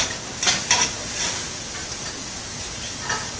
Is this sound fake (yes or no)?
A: no